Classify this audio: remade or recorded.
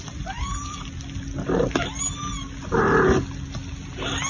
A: recorded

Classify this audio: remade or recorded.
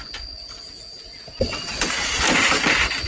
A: recorded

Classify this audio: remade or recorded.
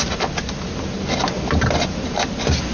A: recorded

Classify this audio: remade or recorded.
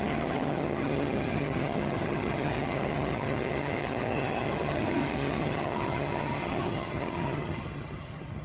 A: remade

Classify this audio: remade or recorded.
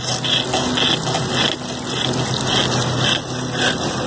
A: recorded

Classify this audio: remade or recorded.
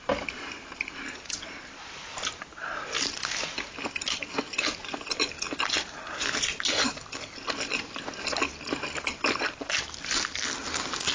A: recorded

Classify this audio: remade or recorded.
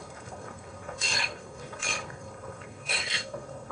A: remade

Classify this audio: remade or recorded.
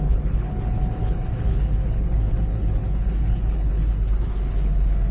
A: remade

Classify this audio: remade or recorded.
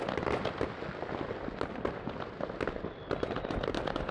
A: recorded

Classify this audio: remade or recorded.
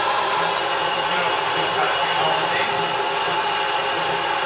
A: recorded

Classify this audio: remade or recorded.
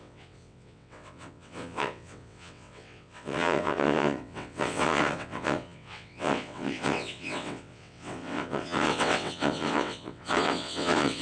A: remade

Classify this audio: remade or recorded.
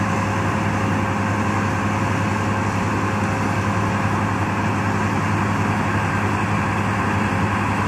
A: recorded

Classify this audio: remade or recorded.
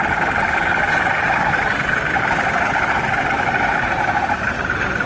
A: remade